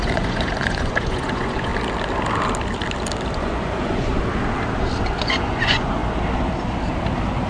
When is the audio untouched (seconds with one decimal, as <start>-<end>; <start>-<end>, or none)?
1.7-3.3; 4.1-5.1; 6.0-7.5